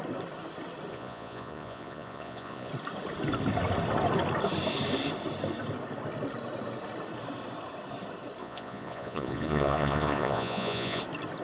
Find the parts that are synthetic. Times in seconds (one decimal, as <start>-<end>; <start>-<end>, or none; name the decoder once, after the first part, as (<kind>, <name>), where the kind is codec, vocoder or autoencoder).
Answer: 0.9-2.7 (vocoder, Vocos); 8.4-11.0